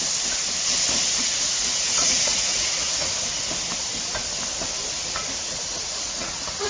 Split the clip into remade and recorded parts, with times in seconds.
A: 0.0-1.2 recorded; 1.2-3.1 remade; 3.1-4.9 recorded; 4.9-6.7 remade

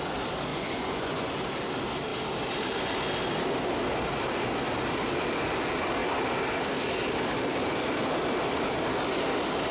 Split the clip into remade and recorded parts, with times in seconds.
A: 0.0-0.5 recorded; 0.5-1.3 remade; 1.3-9.7 recorded

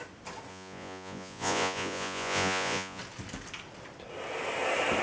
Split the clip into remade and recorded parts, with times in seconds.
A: 0.0-0.5 recorded; 0.5-3.0 remade; 3.0-5.0 recorded

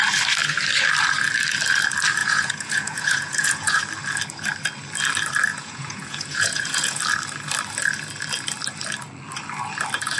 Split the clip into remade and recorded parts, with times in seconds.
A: 0.0-2.2 recorded; 2.2-3.8 remade; 3.8-5.5 recorded; 5.5-7.0 remade; 7.0-10.2 recorded

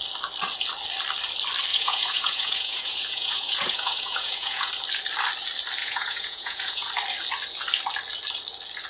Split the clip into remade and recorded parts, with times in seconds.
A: 0.0-1.7 recorded; 1.7-4.7 remade; 4.7-5.8 recorded; 5.8-6.9 remade; 6.9-8.9 recorded

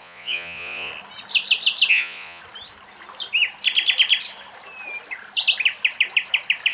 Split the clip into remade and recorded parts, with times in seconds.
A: 0.0-0.9 remade; 0.9-1.9 recorded; 1.9-2.4 remade; 2.4-6.7 recorded